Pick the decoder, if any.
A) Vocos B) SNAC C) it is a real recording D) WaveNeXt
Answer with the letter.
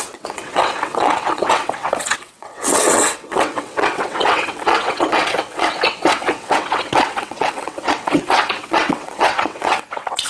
D